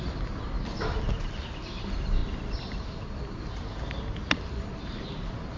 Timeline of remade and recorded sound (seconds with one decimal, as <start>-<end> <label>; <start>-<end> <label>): 0.0-2.2 recorded; 2.2-4.4 remade; 4.4-5.6 recorded

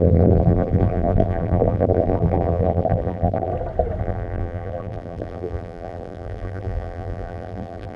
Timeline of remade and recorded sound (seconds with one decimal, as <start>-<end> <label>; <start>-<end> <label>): 0.0-3.5 remade; 3.5-4.0 recorded; 4.0-8.0 remade

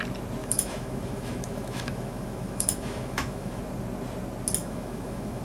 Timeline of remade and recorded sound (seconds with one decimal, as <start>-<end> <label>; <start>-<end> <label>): 0.0-0.4 recorded; 0.4-3.6 remade; 3.6-4.6 recorded; 4.6-5.4 remade